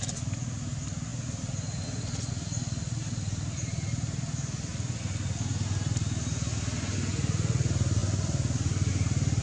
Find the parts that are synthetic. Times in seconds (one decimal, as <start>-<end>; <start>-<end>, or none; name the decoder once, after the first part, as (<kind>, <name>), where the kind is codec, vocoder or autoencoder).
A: none